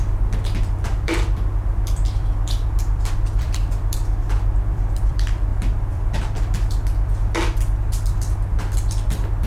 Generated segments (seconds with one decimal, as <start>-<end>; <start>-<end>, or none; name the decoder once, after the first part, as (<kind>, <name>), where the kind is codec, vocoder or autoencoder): 0.0-9.5 (vocoder, BigVGAN v2)

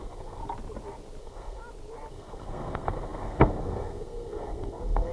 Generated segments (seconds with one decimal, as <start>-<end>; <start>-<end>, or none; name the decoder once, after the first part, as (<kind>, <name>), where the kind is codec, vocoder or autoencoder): 0.0-0.4 (codec, SNAC); 1.2-1.6; 2.1-5.1

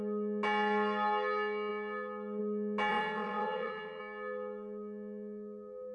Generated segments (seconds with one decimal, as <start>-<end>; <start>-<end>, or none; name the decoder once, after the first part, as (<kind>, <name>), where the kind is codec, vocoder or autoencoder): 2.9-4.0 (vocoder, WaveNeXt)

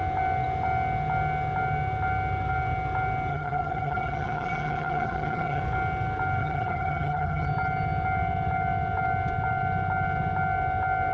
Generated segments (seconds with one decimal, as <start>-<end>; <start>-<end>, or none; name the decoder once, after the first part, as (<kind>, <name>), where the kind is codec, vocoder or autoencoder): 3.3-5.6 (vocoder, HiFi-GAN); 6.4-7.5

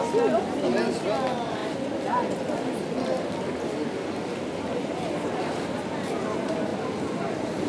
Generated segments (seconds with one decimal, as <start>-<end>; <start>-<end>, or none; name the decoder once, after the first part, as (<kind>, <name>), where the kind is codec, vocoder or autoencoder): 6.7-7.7 (vocoder, BigVGAN v2)

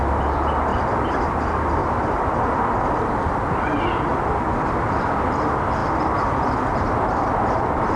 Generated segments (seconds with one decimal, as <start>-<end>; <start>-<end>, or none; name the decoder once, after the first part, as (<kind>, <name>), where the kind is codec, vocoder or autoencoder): none

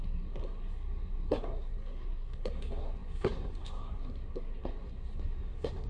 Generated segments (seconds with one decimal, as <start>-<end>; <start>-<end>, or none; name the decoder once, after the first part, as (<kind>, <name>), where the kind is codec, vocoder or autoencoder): 0.0-5.9 (codec, SNAC)